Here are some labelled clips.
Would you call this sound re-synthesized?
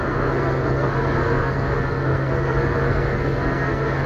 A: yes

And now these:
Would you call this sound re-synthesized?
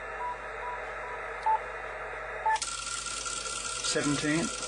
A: no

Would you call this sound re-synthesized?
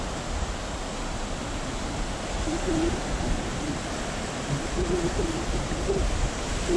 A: no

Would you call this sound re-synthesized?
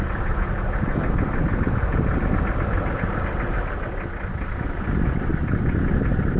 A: no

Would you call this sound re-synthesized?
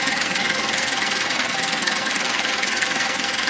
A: yes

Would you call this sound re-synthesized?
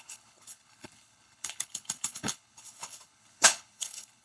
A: yes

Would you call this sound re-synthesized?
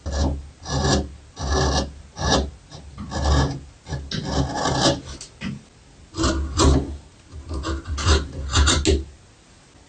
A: no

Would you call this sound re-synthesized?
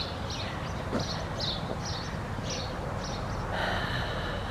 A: no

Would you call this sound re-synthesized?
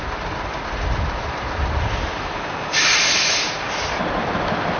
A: no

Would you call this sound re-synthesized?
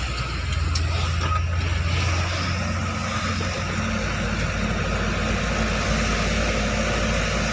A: no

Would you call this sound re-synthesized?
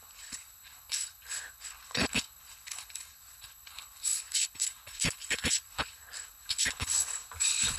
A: yes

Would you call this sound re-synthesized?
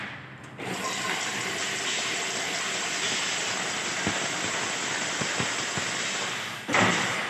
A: no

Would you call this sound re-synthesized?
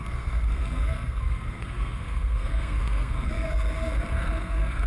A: yes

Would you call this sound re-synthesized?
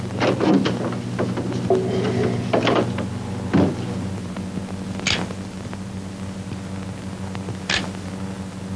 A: no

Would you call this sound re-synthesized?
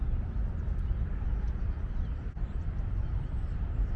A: no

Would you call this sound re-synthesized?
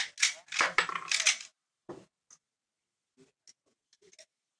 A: no